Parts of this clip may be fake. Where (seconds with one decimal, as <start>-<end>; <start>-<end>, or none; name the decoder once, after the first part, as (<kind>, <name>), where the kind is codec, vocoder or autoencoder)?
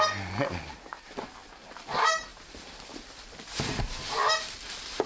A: none